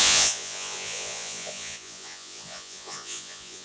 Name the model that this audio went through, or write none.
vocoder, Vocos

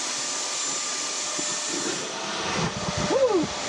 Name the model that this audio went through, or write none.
none